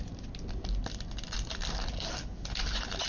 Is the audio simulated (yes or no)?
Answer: no